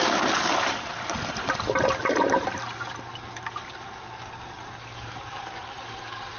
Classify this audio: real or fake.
real